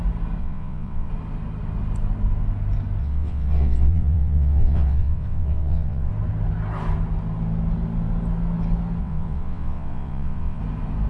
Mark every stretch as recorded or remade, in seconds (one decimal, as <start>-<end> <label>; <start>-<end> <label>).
0.0-0.4 recorded; 0.4-1.1 remade; 1.1-3.0 recorded; 3.0-6.1 remade; 6.1-9.0 recorded; 9.0-10.6 remade; 10.6-11.1 recorded

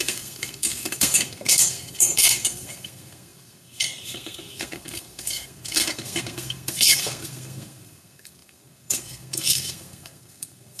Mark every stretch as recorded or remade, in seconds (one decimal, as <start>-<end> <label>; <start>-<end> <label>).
0.0-10.8 remade

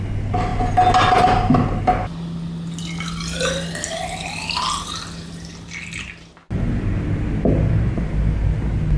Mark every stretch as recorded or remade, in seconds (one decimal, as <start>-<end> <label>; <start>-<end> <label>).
0.0-9.0 recorded

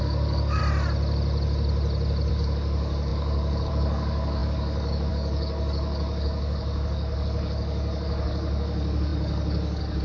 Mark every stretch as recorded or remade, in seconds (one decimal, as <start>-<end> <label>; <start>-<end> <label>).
0.0-0.6 remade; 0.6-2.3 recorded; 2.3-10.0 remade

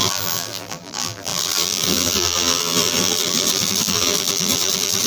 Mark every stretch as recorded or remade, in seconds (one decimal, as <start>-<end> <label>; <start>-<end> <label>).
0.0-5.1 remade

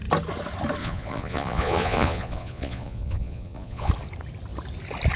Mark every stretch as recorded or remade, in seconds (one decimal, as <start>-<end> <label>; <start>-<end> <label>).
0.0-0.8 recorded; 0.8-3.9 remade; 3.9-5.2 recorded